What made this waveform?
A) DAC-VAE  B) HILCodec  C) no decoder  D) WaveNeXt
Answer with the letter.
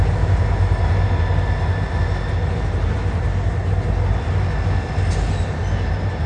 C